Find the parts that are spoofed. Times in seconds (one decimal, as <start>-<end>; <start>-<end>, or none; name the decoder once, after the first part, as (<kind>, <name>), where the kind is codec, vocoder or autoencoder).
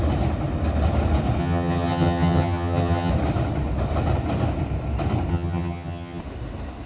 1.4-3.1 (vocoder, HiFi-GAN); 5.3-6.2